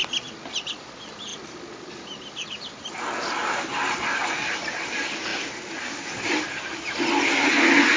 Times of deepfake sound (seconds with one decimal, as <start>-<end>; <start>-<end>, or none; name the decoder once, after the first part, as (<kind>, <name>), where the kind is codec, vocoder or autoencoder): none